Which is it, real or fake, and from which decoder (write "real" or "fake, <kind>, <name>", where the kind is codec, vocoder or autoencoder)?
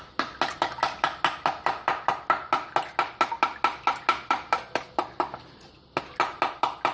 real